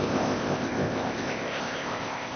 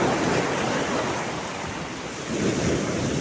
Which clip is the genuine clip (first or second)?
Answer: second